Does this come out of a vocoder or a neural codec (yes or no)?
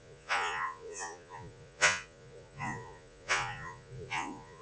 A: yes